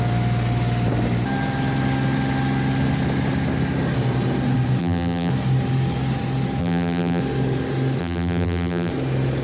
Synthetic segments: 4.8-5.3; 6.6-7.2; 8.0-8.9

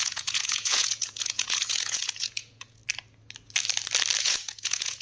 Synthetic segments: 0.0-2.8; 4.2-5.0

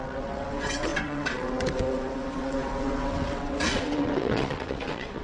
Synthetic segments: 0.0-5.2

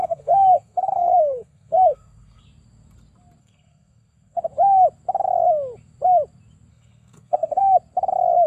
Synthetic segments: 0.0-2.4; 3.4-4.4; 6.7-7.6

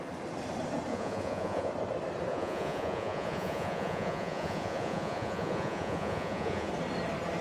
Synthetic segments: 0.9-1.7; 2.3-6.7

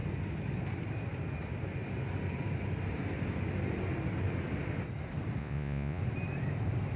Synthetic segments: 5.4-6.0

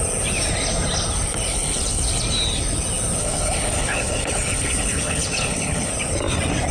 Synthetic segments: 1.5-2.0; 3.2-5.9

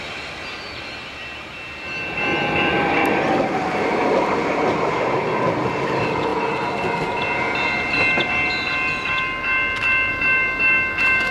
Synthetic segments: 10.1-11.3